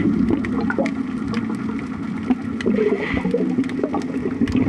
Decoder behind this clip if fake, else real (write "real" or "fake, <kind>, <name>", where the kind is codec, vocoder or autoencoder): real